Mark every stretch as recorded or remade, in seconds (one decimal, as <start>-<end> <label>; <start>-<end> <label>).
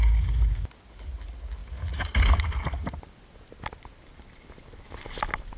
0.0-5.6 recorded